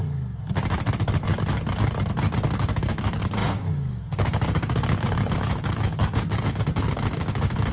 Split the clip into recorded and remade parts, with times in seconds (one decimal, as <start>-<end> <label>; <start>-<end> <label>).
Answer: 0.0-2.7 recorded; 2.7-7.7 remade